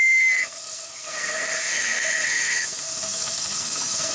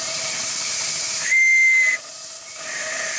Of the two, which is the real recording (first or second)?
second